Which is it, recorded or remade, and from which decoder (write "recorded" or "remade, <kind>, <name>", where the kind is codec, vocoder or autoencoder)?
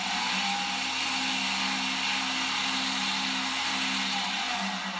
recorded